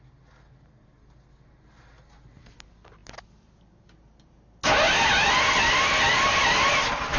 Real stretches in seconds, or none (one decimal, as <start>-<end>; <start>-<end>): 0.0-7.2